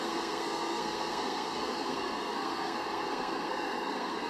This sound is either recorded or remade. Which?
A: remade